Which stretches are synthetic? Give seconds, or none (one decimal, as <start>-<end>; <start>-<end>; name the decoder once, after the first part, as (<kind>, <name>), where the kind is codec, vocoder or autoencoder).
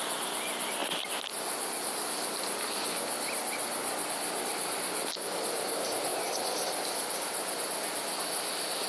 none